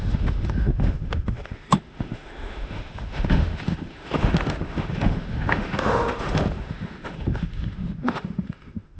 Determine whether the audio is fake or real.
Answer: fake